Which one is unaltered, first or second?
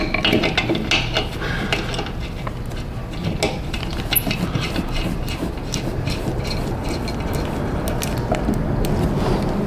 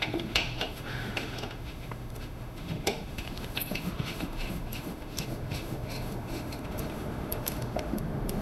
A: first